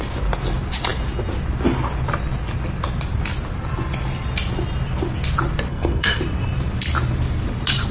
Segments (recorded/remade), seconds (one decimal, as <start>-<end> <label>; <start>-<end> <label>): 0.0-5.7 recorded; 5.7-6.2 remade; 6.2-7.9 recorded